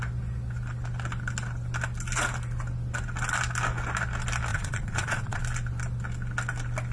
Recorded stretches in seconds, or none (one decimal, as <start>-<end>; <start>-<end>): 0.0-4.5; 5.4-6.9